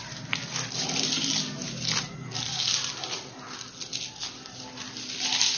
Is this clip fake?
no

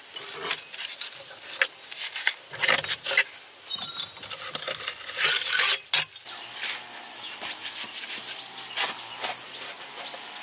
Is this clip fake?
no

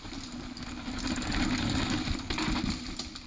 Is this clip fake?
no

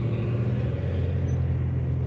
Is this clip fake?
no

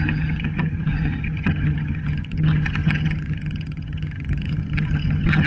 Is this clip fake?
yes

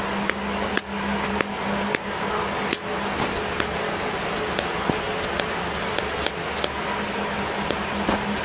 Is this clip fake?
no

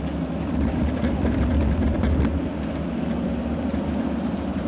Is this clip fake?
no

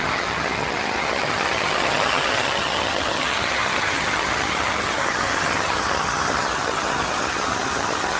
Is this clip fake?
yes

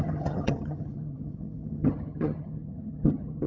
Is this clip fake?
yes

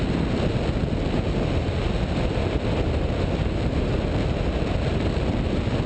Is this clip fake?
no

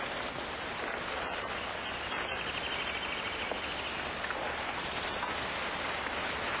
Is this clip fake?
no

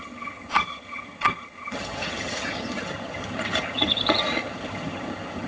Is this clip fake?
yes